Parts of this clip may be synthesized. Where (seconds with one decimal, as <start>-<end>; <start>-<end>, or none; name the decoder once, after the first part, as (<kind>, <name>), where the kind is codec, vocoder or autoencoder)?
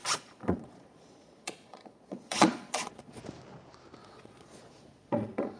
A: 0.0-3.2 (vocoder, Vocos); 4.0-5.6